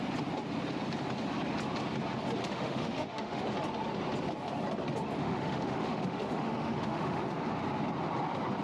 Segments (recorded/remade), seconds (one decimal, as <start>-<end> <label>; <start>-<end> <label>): 0.0-2.4 recorded; 2.4-3.4 remade; 3.4-5.2 recorded; 5.2-7.2 remade; 7.2-8.6 recorded